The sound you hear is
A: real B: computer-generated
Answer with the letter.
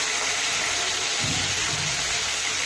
A